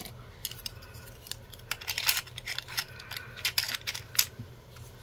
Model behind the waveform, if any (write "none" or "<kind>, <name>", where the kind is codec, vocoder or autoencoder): none